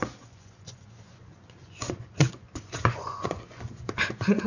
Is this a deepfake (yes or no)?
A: yes